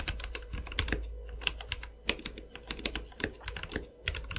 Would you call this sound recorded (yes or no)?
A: yes